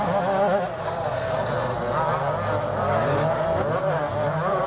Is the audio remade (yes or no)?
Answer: no